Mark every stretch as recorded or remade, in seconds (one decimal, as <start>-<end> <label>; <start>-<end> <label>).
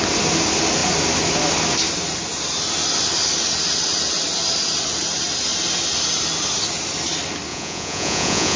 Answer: 0.0-7.5 recorded; 7.5-8.6 remade